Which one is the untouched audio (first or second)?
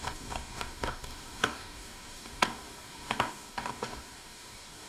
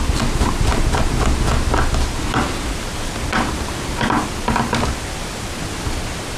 second